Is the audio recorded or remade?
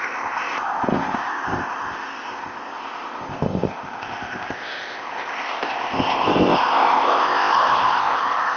remade